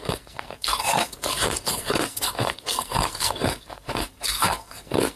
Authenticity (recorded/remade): remade